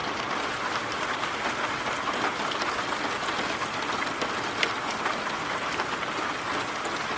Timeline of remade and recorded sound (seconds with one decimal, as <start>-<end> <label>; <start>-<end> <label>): 0.0-7.2 recorded